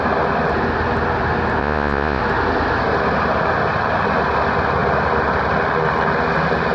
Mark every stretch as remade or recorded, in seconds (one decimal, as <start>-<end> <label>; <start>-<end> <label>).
0.0-1.6 recorded; 1.6-2.2 remade; 2.2-6.7 recorded